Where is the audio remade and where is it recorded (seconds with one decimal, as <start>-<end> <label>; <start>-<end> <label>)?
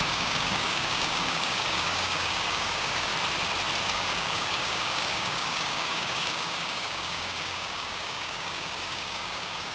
0.0-3.1 remade; 3.1-3.8 recorded; 3.8-9.7 remade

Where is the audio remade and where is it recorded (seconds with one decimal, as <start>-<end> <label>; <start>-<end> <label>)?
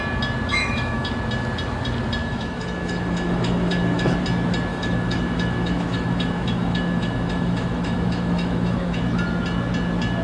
0.0-0.5 recorded; 0.5-1.1 remade; 1.1-2.2 recorded; 2.2-4.2 remade; 4.2-4.7 recorded; 4.7-9.0 remade; 9.0-10.2 recorded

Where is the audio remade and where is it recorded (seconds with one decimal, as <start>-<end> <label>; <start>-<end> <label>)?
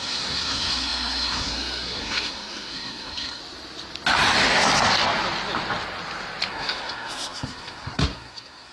0.0-3.4 remade; 3.4-6.5 recorded; 6.5-8.7 remade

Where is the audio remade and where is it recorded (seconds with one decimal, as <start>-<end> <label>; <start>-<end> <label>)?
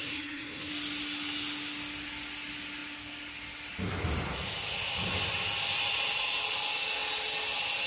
0.0-0.7 remade; 0.7-7.9 recorded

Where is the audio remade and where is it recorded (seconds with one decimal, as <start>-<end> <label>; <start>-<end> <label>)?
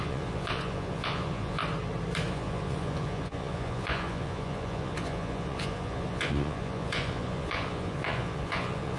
0.0-1.6 remade; 1.6-2.3 recorded; 2.3-9.0 remade